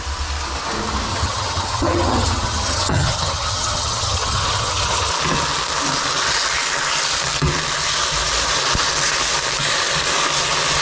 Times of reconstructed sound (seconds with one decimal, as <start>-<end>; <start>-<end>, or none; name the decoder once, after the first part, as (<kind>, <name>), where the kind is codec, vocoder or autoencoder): 1.1-5.1 (vocoder, HiFi-GAN)